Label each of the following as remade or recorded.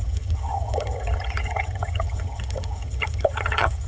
remade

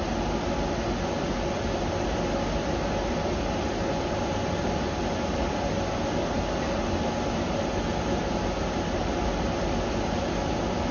recorded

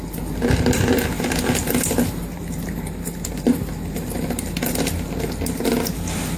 remade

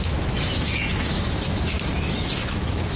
remade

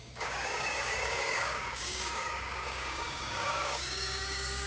remade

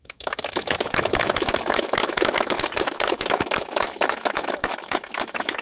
remade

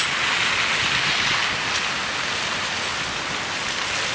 recorded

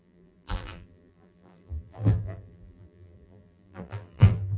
remade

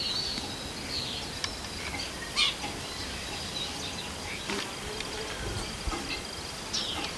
recorded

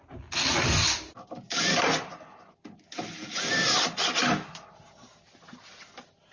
recorded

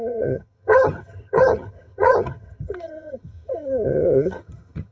remade